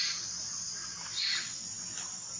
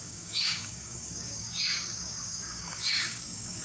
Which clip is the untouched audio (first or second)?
first